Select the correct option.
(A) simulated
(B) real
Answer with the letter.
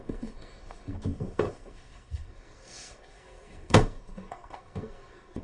A